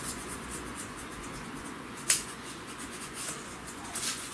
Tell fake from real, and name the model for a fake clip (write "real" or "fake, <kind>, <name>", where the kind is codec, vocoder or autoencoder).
fake, vocoder, Vocos